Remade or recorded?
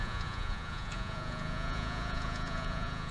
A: remade